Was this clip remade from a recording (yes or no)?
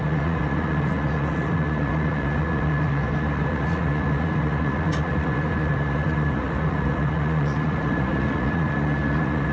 yes